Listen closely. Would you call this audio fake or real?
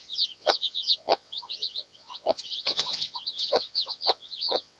fake